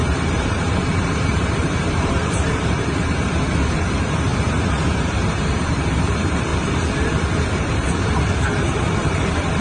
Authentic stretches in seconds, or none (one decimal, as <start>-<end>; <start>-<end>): 6.5-7.5